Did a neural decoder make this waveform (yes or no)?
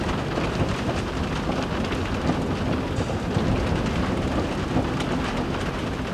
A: no